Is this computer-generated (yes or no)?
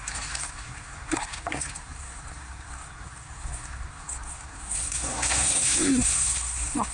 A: yes